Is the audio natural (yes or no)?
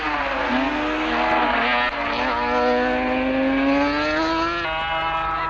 yes